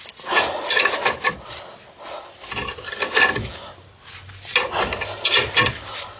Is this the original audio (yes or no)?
yes